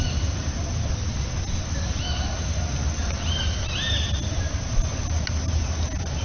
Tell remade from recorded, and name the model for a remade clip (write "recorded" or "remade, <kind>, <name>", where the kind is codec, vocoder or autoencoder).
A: recorded